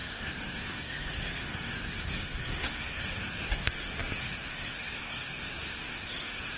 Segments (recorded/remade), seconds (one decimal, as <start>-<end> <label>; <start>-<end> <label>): 0.0-6.6 remade